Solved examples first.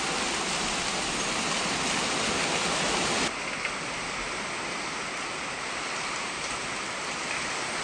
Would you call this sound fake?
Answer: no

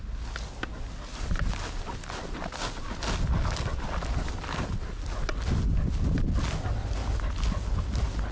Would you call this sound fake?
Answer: no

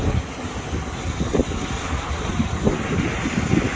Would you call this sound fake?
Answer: no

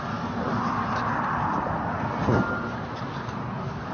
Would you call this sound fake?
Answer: no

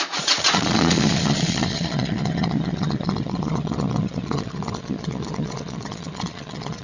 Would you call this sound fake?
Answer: yes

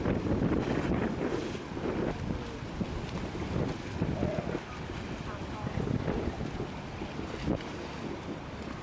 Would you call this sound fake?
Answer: no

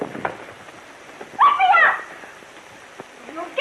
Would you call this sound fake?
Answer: no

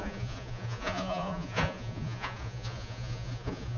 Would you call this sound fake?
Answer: yes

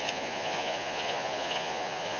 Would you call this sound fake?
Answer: yes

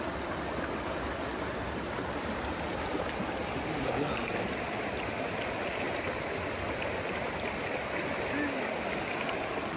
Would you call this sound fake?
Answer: no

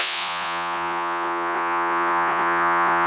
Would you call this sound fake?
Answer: yes